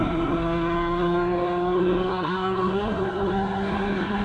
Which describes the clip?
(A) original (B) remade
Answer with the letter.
B